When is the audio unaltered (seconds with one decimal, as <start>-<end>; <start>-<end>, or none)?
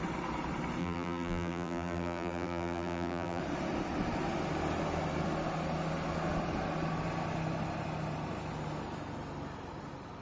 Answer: 0.0-0.8; 3.4-10.2